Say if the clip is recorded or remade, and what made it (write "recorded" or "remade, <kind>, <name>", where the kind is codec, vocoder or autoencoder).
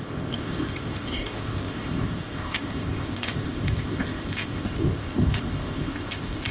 remade, codec, ZipCodec